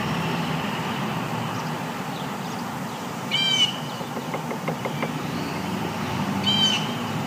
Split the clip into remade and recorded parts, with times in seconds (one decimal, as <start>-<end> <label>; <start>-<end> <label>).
0.0-1.1 remade; 1.1-2.9 recorded; 2.9-7.3 remade